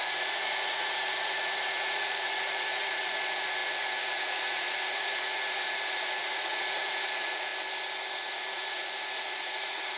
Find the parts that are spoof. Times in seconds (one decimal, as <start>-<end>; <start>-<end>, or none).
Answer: 0.0-7.5; 8.1-10.0